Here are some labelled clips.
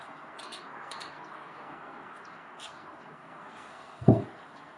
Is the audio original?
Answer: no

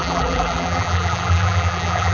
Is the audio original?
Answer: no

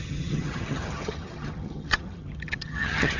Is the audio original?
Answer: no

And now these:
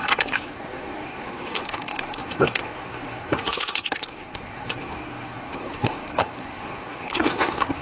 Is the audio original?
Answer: no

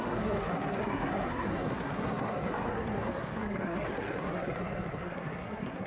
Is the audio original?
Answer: no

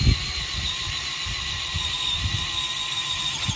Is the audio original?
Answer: yes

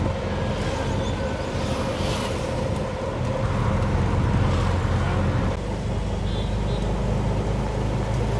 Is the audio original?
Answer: yes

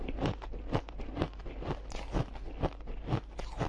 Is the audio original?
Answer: yes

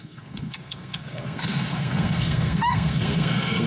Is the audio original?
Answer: no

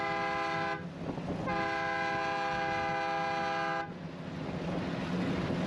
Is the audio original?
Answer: yes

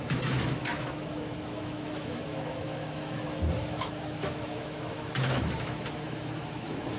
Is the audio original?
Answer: no